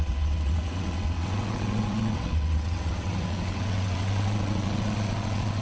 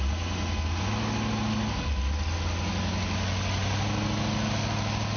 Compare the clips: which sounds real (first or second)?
second